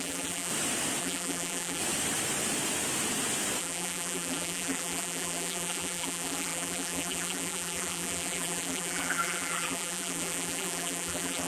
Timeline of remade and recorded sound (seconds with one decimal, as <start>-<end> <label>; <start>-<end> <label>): 0.0-0.5 remade; 0.5-1.0 recorded; 1.0-1.8 remade; 1.8-3.6 recorded; 3.6-11.5 remade